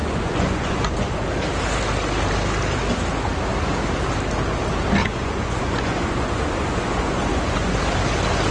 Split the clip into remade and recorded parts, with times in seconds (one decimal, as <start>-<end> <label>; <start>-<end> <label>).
0.0-1.1 remade; 1.1-5.0 recorded; 5.0-7.8 remade; 7.8-8.5 recorded